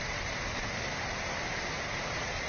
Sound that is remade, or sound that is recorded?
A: remade